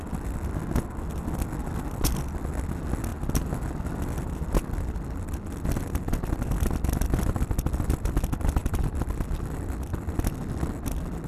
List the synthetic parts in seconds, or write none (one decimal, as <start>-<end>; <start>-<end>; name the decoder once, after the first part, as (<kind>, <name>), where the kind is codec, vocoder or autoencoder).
none

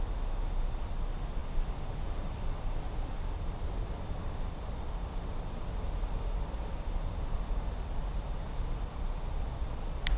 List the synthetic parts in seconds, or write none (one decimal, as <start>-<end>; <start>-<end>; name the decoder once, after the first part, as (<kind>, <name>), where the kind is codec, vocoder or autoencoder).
none

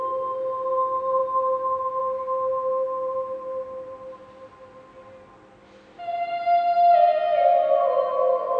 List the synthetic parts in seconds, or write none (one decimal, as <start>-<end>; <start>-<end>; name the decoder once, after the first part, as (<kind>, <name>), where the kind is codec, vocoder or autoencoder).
none

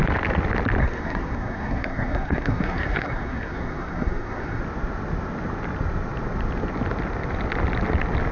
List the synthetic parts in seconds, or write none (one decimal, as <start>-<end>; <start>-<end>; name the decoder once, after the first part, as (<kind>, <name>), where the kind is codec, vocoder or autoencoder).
0.8-4.6 (codec, SNAC)

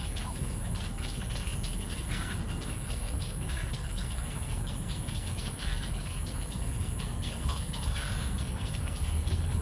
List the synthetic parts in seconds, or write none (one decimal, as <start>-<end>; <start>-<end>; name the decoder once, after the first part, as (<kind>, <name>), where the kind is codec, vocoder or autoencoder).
0.0-9.6 (codec, SNAC)

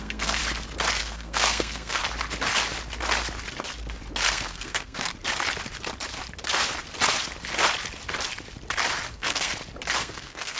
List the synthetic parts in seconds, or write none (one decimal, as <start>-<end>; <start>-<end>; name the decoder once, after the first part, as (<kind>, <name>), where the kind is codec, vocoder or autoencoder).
0.0-0.4 (codec, SNAC); 1.0-2.0; 4.3-5.1; 9.1-9.5; 10.0-10.6

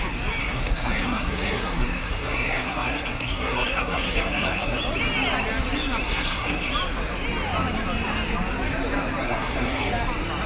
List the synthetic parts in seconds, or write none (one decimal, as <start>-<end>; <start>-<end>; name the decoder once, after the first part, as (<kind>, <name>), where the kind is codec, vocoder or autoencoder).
0.4-4.8 (codec, SNAC); 6.0-6.7; 9.2-9.9